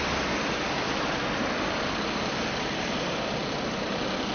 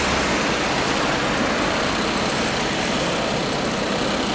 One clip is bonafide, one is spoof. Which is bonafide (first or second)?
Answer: second